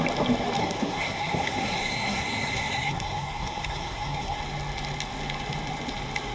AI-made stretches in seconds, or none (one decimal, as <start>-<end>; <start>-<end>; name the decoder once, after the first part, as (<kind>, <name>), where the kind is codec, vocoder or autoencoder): 0.6-4.4 (codec, SNAC)